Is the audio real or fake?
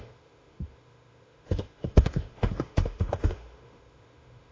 fake